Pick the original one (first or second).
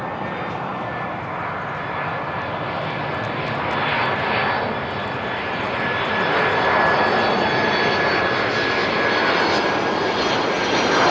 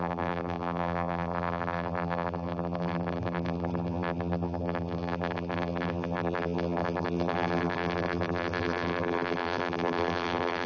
first